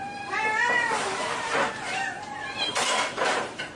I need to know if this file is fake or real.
fake